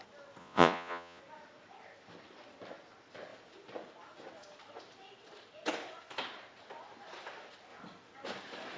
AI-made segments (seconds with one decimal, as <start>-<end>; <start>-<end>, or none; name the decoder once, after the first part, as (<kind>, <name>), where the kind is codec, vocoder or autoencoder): 0.4-1.2 (vocoder, Vocos)